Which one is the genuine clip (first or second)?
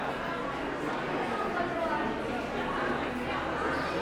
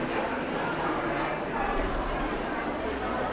first